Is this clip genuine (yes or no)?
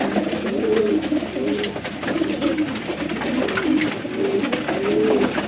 yes